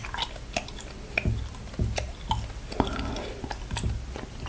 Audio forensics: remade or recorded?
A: recorded